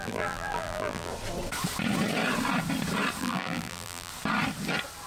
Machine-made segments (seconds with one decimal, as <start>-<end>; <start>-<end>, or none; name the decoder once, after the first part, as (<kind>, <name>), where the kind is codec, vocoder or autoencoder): 0.0-1.1 (vocoder, BigVGAN v2); 3.2-4.1